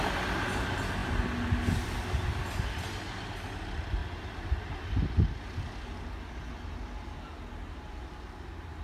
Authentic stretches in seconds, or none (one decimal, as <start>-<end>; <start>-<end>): 0.0-8.8